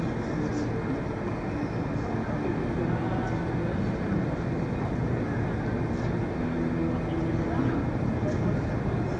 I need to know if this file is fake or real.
real